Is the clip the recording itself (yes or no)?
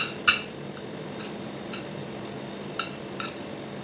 yes